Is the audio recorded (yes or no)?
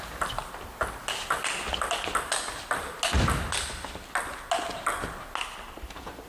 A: yes